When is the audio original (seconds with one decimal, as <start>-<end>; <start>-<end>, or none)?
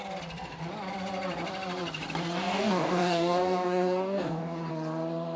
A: 0.0-2.4; 4.7-5.4